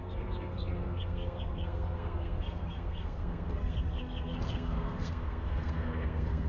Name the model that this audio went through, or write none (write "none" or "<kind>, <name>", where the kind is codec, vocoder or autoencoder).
codec, SNAC